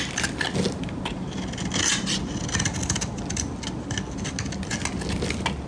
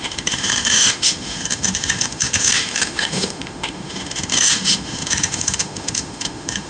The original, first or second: first